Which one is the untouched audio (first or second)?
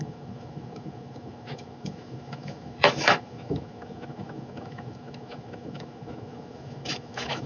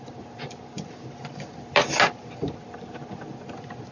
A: second